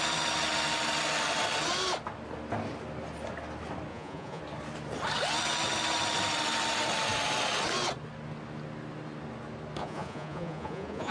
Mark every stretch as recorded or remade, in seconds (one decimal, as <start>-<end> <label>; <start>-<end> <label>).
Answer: 0.0-3.9 recorded; 3.9-4.4 remade; 4.4-9.8 recorded; 9.8-11.1 remade

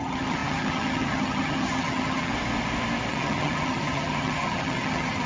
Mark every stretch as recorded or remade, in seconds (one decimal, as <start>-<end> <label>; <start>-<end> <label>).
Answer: 0.0-2.3 remade; 2.3-3.1 recorded; 3.1-5.3 remade